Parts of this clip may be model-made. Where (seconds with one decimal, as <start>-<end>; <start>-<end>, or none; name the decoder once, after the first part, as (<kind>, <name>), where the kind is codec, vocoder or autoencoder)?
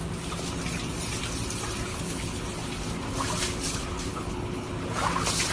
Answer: 1.9-2.4 (codec, HILCodec); 4.1-4.7